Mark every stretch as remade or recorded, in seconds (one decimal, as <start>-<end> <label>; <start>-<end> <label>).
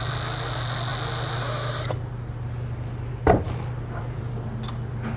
0.0-5.2 recorded